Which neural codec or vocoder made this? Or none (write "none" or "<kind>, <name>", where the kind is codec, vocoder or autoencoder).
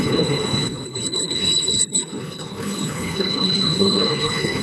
codec, HILCodec